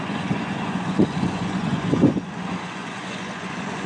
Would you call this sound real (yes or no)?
no